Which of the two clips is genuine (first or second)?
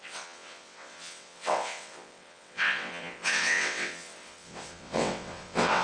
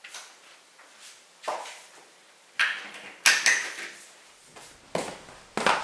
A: second